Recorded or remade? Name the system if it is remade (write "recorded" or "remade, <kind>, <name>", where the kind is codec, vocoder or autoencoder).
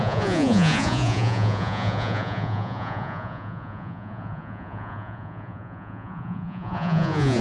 remade, vocoder, Vocos